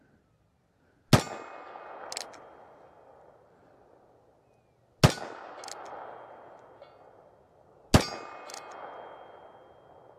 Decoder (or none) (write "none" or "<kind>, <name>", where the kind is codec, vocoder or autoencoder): none